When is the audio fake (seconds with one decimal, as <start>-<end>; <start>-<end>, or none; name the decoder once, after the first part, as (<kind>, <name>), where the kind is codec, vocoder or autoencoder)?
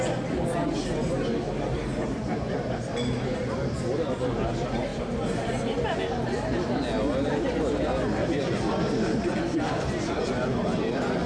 none